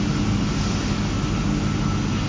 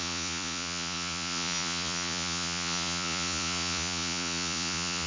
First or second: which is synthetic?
second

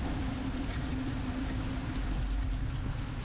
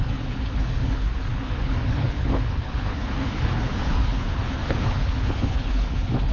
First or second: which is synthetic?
second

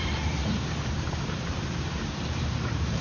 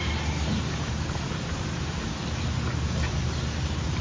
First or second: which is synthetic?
first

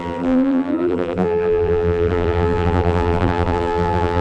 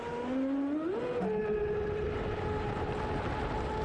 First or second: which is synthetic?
first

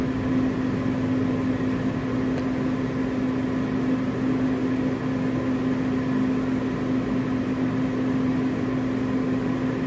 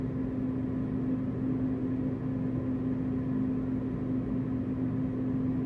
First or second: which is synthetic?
first